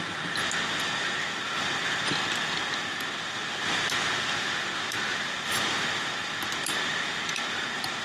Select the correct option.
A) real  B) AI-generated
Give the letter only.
A